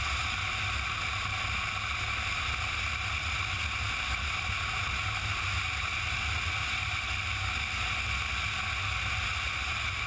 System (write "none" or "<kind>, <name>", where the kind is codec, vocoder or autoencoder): none